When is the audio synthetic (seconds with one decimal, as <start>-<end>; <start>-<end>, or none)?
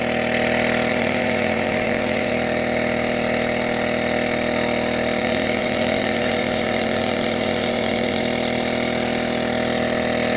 0.9-2.3; 5.2-8.2